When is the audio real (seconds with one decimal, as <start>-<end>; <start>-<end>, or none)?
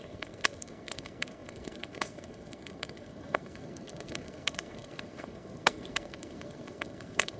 none